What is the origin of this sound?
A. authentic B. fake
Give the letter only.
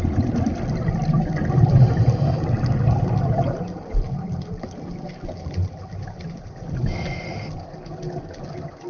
A